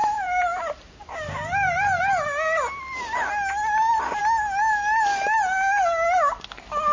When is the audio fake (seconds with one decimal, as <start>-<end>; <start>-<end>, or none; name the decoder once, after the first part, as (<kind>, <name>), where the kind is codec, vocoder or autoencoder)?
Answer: 0.0-2.0 (vocoder, BigVGAN v2)